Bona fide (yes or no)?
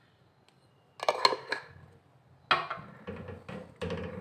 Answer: yes